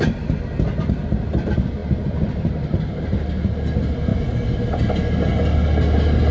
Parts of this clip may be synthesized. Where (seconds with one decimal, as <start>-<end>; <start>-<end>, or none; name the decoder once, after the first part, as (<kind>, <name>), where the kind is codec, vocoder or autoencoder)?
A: none

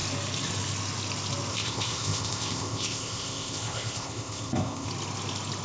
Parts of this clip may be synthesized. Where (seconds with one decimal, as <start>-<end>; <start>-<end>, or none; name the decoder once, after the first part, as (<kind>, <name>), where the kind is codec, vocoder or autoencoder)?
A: 1.5-4.9 (codec, ZipCodec)

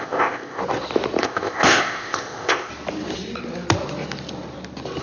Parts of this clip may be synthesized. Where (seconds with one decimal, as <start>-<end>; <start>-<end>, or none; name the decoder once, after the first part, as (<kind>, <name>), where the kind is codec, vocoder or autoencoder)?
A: 0.0-0.6 (codec, ZipCodec); 1.2-2.7